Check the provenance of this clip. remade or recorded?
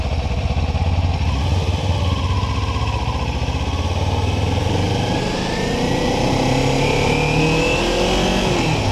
recorded